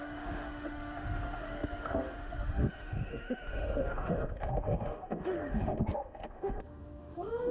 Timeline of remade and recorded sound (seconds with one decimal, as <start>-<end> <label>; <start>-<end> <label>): 0.0-7.5 remade

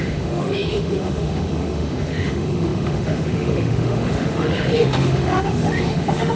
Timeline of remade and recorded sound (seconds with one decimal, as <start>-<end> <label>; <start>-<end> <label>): 0.0-6.4 remade

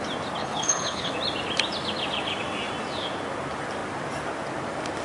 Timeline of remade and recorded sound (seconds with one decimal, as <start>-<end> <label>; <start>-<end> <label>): 0.0-0.4 recorded; 0.4-1.1 remade; 1.1-5.0 recorded

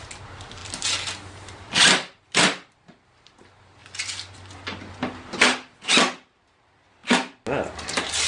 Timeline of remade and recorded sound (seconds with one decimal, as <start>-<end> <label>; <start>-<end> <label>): 0.0-8.3 recorded

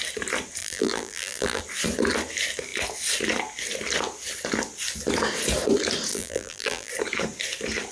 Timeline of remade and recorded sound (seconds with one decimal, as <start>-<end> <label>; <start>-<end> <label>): 0.0-0.6 recorded; 0.6-1.6 remade; 1.6-6.1 recorded; 6.1-6.9 remade; 6.9-7.9 recorded

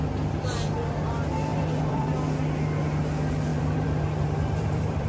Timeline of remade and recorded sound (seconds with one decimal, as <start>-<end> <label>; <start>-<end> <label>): 0.0-1.5 recorded; 1.5-2.1 remade; 2.1-3.5 recorded; 3.5-5.1 remade

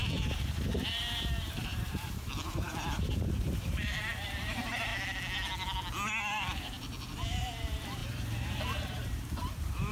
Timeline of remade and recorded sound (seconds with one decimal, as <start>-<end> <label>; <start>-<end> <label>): 0.0-4.9 remade; 4.9-6.2 recorded; 6.2-9.9 remade